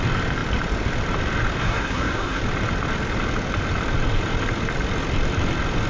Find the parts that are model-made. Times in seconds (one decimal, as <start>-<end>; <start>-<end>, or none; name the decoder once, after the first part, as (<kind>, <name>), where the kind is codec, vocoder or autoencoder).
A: 1.6-2.4 (codec, SNAC)